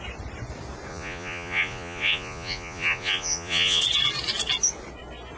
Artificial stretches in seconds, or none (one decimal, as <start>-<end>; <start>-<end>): 0.9-3.8